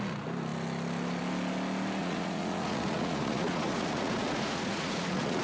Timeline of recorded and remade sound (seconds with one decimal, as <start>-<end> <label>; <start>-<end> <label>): 0.0-2.0 recorded; 2.0-5.4 remade